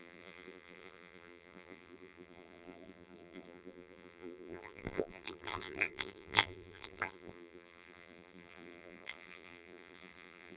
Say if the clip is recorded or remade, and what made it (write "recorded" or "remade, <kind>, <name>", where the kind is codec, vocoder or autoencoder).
remade, vocoder, BigVGAN v2